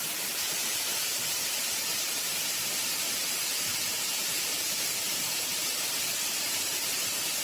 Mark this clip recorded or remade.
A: remade